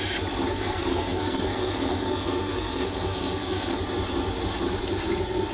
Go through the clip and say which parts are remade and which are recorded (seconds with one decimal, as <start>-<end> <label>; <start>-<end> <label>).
0.0-0.5 recorded; 0.5-3.8 remade; 3.8-5.5 recorded